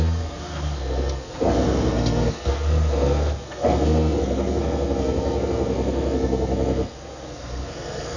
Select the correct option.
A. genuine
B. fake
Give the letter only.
B